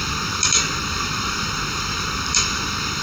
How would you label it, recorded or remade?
remade